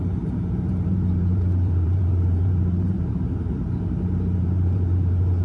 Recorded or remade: remade